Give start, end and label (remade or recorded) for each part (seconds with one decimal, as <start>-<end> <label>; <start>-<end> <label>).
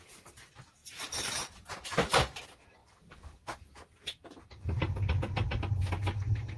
0.0-0.8 recorded; 0.8-2.4 remade; 2.4-2.8 recorded; 2.8-4.2 remade; 4.2-6.6 recorded